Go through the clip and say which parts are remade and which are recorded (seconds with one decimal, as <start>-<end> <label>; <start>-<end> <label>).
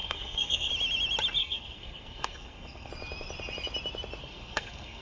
0.0-0.7 remade; 0.7-1.4 recorded; 1.4-2.9 remade; 2.9-4.2 recorded; 4.2-5.0 remade